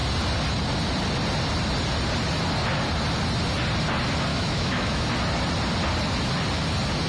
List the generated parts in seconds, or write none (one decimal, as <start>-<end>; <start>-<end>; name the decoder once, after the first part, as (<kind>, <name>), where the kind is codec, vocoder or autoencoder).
4.3-5.1 (autoencoder, DAC-VAE)

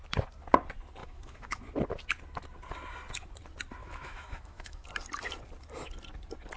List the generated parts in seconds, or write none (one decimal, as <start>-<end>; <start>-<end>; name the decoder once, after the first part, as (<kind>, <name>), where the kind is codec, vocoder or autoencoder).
1.0-1.6 (autoencoder, DAC-VAE); 3.8-4.9

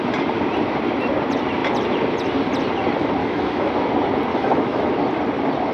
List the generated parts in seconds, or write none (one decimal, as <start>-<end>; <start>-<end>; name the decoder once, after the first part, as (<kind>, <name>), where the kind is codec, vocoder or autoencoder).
3.2-3.7 (autoencoder, DAC-VAE); 4.3-4.9

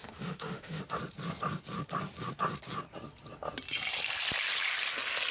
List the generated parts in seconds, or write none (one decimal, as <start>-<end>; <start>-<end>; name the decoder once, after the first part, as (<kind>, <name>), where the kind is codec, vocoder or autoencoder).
0.0-0.8 (autoencoder, DAC-VAE)

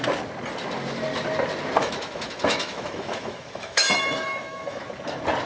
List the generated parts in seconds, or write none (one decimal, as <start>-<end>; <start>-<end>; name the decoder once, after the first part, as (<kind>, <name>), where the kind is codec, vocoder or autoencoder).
1.8-4.9 (autoencoder, DAC-VAE)

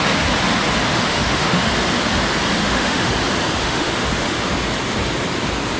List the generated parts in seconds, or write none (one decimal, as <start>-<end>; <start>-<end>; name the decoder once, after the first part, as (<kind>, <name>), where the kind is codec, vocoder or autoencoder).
0.9-1.7 (autoencoder, DAC-VAE); 2.6-3.1; 3.6-4.5